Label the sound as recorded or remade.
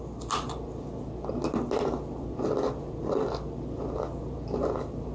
recorded